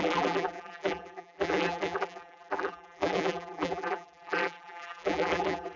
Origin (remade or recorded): remade